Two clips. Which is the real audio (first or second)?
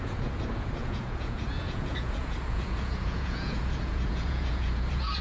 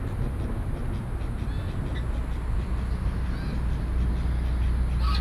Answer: second